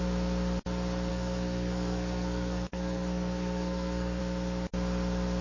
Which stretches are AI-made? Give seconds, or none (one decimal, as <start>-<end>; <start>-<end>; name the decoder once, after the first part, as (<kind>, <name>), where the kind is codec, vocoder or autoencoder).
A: 1.1-4.2 (codec, SNAC)